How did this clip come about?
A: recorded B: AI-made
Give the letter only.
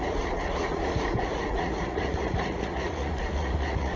B